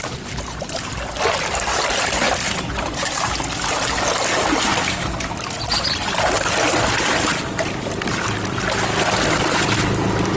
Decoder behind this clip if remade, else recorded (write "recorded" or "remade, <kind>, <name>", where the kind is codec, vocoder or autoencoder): recorded